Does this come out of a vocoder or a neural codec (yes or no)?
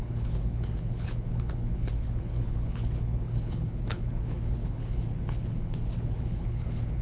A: yes